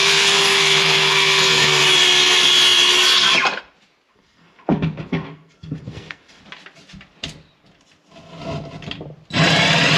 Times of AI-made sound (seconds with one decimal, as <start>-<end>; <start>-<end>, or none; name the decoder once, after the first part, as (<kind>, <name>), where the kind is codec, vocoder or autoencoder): 0.0-1.8 (codec, SNAC); 4.1-6.4